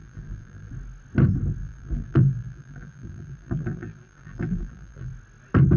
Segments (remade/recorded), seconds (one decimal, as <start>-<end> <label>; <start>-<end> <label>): 0.0-0.7 remade; 0.7-1.6 recorded; 1.6-5.1 remade; 5.1-5.8 recorded